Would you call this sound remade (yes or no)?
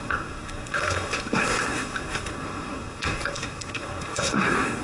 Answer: yes